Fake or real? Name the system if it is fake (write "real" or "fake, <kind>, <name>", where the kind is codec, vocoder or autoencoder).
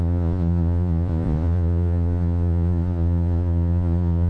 fake, vocoder, Vocos